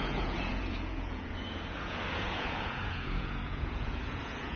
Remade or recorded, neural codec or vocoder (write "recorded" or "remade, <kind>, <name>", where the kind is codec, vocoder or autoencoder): remade, vocoder, Vocos